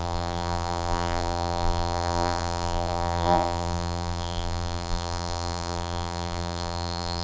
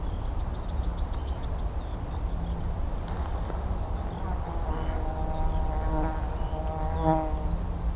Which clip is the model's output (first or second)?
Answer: first